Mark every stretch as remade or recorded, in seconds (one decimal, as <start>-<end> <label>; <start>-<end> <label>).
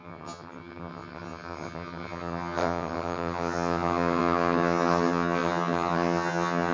0.0-6.7 remade